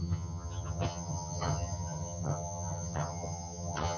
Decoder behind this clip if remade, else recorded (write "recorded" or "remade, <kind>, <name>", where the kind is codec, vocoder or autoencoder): remade, vocoder, HiFi-GAN